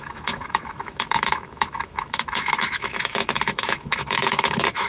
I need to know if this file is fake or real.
fake